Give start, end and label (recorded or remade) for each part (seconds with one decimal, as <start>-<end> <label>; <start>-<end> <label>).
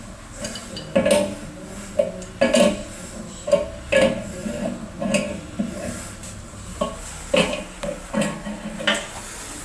0.0-9.6 recorded